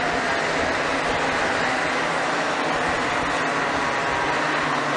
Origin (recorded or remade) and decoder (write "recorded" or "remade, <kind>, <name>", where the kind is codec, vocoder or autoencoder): recorded